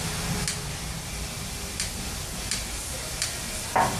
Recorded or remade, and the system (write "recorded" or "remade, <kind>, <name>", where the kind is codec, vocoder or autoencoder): recorded